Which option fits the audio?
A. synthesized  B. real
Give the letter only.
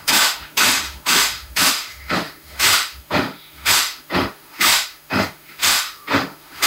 A